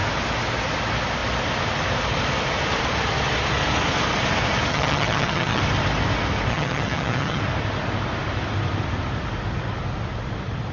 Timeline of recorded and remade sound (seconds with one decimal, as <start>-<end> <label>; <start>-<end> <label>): 0.0-4.7 recorded; 4.7-5.6 remade; 5.6-6.5 recorded; 6.5-7.4 remade; 7.4-10.7 recorded